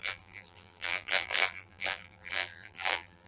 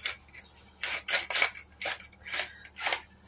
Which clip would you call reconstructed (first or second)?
first